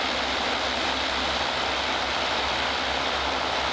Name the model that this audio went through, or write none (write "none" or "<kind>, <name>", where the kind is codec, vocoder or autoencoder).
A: none